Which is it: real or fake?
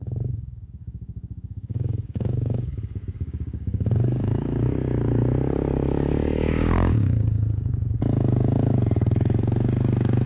fake